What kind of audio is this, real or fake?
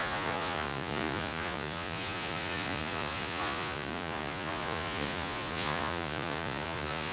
fake